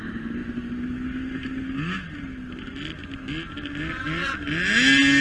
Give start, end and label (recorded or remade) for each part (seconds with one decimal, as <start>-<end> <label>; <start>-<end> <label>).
0.0-5.2 recorded